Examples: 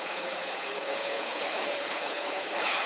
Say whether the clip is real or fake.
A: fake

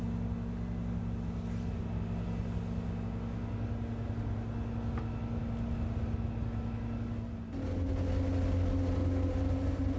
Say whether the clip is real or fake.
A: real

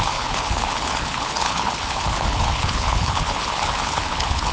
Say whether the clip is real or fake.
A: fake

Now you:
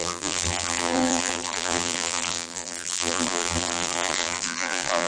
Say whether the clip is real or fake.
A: fake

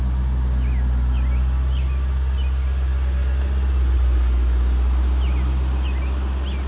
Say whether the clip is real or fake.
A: real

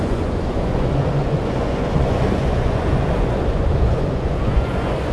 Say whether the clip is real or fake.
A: fake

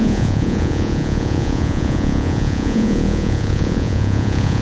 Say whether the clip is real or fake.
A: fake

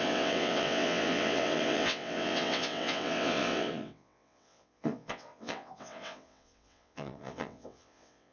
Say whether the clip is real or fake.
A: fake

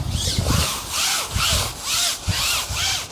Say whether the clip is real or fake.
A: real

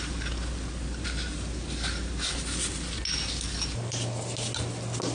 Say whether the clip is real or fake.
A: real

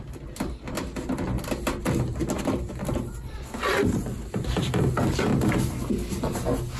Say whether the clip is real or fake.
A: real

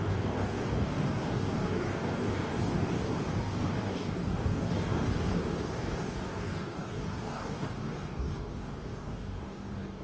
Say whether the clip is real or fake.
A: fake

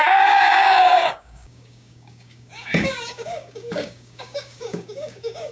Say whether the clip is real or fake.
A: fake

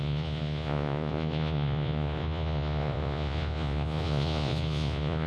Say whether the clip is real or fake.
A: fake